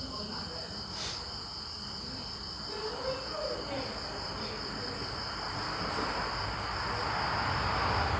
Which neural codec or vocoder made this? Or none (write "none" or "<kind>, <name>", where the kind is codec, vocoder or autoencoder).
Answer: none